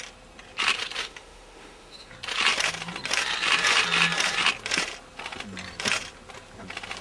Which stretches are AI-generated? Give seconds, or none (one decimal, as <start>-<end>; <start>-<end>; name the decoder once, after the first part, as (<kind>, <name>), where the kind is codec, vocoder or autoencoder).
1.0-2.1 (autoencoder, DAC-VAE)